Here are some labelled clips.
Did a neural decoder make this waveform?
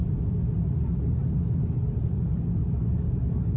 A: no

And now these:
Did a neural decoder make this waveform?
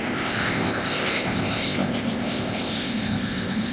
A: yes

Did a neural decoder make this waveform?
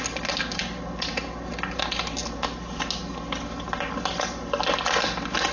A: no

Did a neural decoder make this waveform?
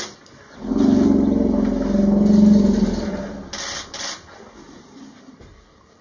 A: no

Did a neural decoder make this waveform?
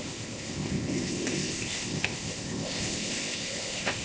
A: yes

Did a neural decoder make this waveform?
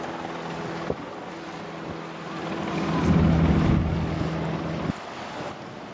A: no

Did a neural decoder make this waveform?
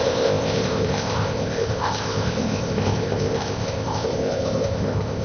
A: yes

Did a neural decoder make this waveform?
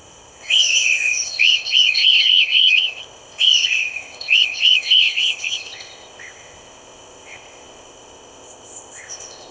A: yes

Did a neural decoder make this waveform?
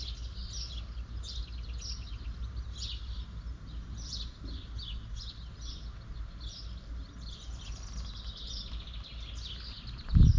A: no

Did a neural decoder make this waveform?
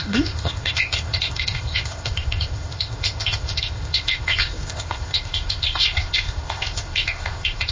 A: yes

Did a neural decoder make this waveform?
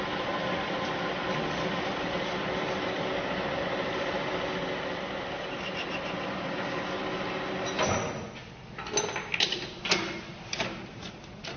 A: no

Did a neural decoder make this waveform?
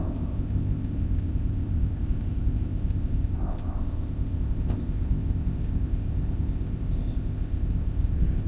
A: yes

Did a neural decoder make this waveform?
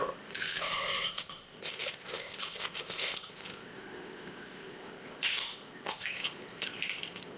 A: yes